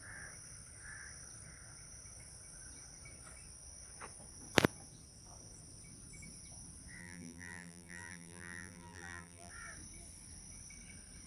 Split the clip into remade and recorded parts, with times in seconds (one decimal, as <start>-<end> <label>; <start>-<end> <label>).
0.0-7.0 recorded; 7.0-9.5 remade; 9.5-11.3 recorded